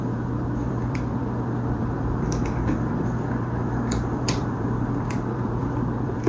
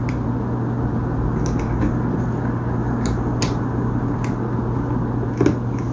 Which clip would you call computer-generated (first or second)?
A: first